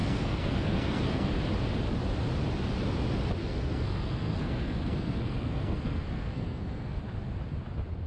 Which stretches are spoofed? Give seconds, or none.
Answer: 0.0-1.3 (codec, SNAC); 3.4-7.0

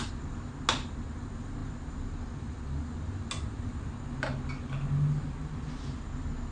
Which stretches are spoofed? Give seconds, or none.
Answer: none